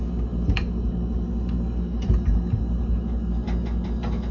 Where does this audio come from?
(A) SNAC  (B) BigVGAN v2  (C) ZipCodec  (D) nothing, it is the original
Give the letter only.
D